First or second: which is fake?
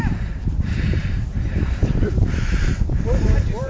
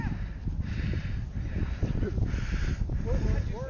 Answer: first